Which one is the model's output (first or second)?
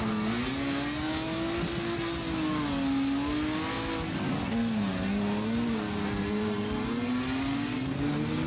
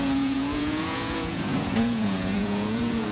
second